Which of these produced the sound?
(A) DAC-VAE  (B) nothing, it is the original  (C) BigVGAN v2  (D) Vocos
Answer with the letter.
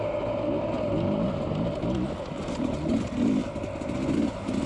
B